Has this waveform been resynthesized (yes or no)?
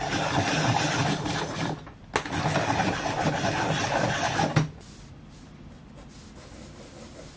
no